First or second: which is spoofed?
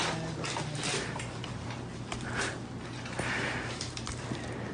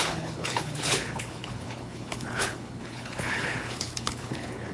second